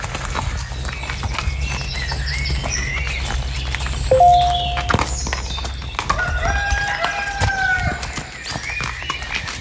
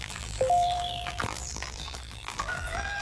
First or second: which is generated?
second